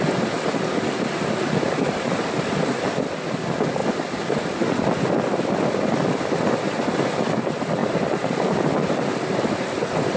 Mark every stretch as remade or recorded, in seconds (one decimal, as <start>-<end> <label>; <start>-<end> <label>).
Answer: 0.0-10.2 recorded

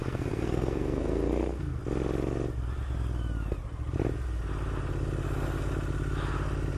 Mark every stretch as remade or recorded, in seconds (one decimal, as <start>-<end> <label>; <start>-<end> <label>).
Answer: 0.0-1.8 remade; 1.8-6.8 recorded

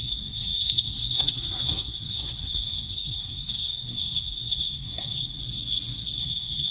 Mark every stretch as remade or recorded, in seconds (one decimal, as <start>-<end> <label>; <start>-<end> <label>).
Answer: 0.0-5.4 remade; 5.4-6.2 recorded; 6.2-6.7 remade

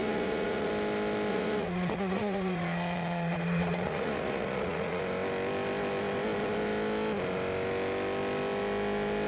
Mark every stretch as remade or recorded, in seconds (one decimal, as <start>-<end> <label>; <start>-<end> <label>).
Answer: 0.0-0.7 remade; 0.7-1.3 recorded; 1.3-5.0 remade; 5.0-9.3 recorded

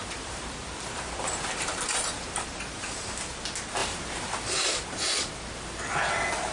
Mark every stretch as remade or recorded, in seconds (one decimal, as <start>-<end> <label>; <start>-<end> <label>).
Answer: 0.0-3.3 remade; 3.3-3.8 recorded; 3.8-4.6 remade; 4.6-6.5 recorded

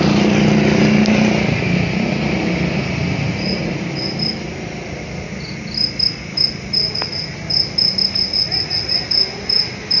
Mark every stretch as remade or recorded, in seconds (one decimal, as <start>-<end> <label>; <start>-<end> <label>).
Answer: 0.0-10.0 recorded